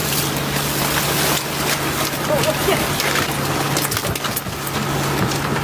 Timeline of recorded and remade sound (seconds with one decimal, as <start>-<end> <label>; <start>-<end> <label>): 0.0-5.6 recorded